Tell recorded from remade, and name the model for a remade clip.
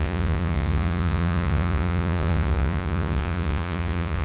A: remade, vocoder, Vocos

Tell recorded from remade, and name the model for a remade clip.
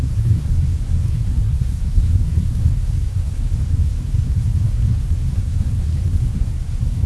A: remade, codec, SNAC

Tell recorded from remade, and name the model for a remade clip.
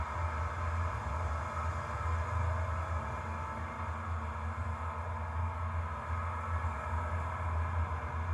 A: recorded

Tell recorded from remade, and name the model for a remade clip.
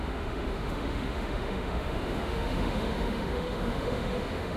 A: remade, autoencoder, DAC-VAE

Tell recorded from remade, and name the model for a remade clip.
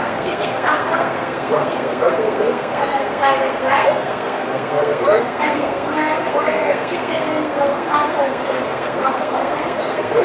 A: remade, codec, SNAC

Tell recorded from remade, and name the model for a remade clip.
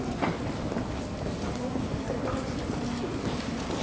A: recorded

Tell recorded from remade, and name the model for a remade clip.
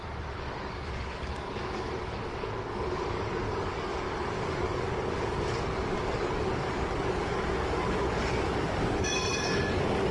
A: remade, codec, DAC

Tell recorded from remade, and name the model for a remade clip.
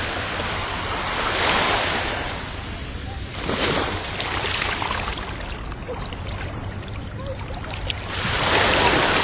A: remade, vocoder, BigVGAN v2